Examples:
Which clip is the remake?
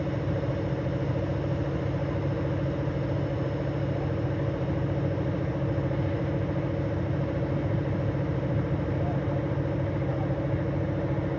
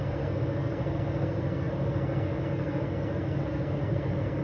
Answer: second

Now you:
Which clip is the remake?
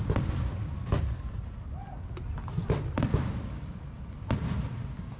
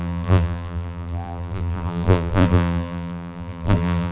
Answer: second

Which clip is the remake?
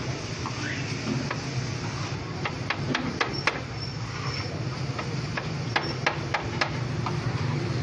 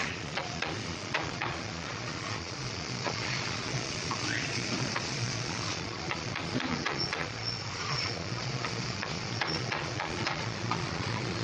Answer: second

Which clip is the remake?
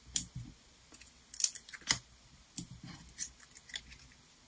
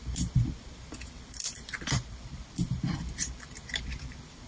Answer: second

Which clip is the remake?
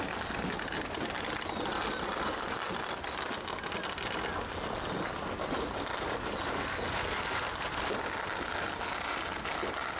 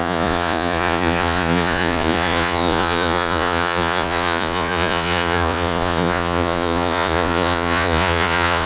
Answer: second